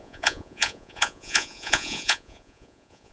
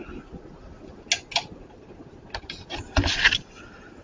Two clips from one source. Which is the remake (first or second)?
first